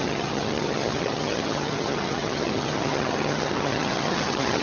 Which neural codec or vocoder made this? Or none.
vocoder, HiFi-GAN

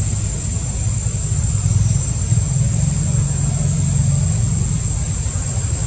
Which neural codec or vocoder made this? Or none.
none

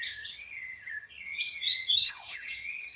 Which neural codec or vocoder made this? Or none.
vocoder, HiFi-GAN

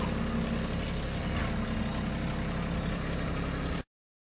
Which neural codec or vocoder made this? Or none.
none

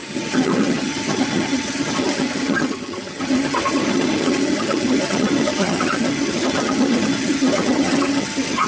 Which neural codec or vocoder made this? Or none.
vocoder, HiFi-GAN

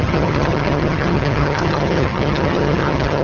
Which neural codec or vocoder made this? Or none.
vocoder, HiFi-GAN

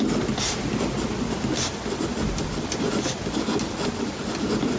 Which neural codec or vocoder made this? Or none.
none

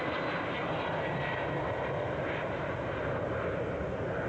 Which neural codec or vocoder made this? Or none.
none